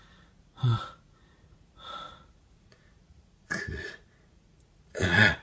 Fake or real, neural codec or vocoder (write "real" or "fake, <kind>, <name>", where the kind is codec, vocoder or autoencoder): fake, vocoder, Vocos